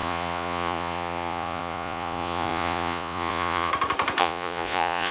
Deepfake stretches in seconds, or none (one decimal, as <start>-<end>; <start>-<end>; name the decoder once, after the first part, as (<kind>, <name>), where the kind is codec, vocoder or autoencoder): 0.0-3.7 (vocoder, Vocos); 4.2-5.1